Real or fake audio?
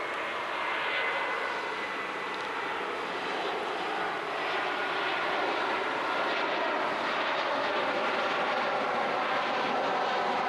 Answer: real